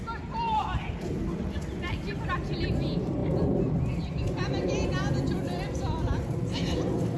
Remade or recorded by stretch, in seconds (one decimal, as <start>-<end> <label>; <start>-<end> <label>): 0.0-7.2 recorded